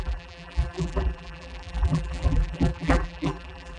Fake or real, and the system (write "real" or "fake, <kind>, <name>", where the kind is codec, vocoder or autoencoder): fake, vocoder, BigVGAN v2